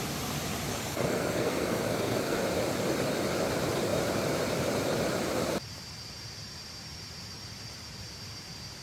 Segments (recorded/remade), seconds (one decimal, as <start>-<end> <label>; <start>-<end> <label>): 0.0-0.7 recorded; 0.7-2.4 remade; 2.4-8.8 recorded